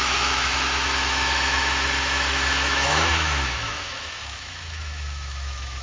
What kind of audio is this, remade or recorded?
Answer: remade